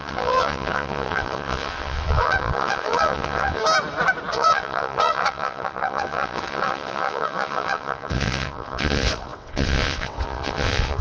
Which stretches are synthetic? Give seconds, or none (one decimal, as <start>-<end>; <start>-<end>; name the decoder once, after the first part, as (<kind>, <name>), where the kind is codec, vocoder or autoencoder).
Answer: 0.0-3.6 (vocoder, WaveNeXt); 4.3-11.0